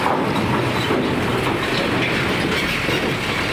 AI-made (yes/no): no